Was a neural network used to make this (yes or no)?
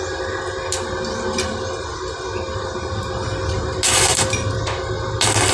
no